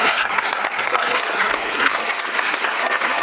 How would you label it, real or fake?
fake